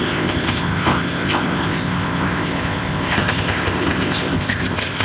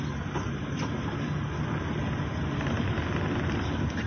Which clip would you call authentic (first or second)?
second